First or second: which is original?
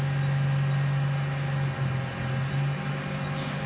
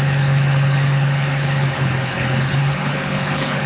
first